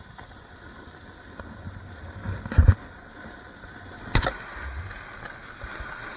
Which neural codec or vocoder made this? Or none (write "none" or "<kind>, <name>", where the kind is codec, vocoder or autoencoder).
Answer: none